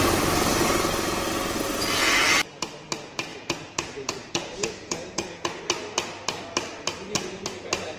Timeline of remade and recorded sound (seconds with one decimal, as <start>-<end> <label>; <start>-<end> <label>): 0.0-3.3 recorded; 3.3-5.6 remade; 5.6-8.0 recorded